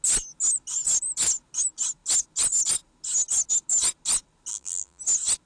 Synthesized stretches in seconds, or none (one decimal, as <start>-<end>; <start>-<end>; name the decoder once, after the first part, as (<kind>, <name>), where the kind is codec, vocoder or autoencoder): 4.5-5.0 (vocoder, BigVGAN v2)